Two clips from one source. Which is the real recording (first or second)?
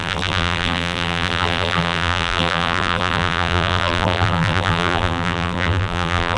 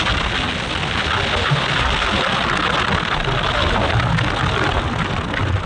second